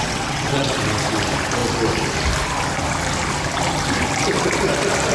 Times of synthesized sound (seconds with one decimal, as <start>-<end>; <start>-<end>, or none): 0.0-0.8